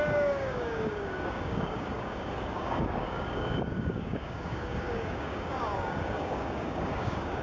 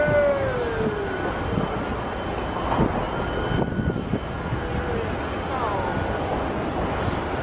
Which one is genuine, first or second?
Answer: second